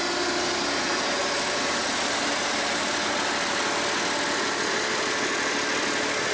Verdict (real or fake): real